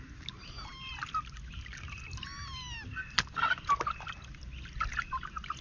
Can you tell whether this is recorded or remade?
recorded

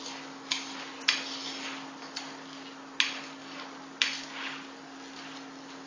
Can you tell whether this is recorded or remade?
recorded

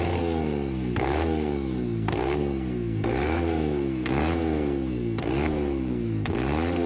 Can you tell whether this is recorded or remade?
remade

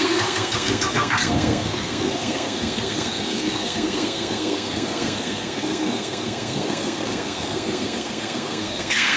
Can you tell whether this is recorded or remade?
remade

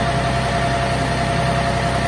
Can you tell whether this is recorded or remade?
recorded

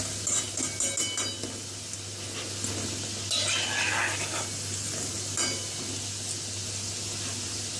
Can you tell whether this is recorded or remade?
recorded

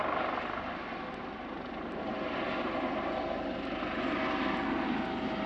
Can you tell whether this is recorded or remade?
recorded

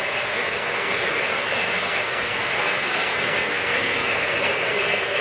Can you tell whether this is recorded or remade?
remade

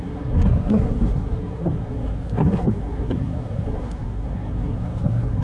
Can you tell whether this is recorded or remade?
remade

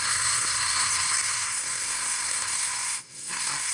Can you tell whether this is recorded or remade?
remade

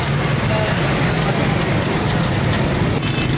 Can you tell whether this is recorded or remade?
recorded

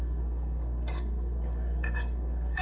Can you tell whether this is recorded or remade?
remade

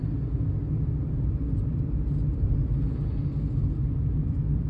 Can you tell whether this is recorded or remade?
recorded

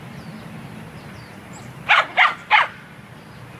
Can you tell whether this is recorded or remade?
recorded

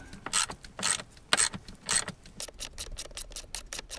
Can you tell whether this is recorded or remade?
recorded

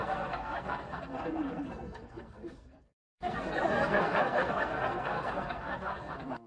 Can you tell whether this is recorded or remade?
remade